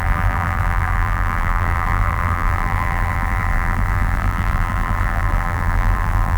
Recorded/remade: remade